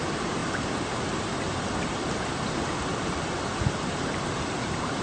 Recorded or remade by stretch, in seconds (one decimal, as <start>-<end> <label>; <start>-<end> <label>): 0.0-5.0 recorded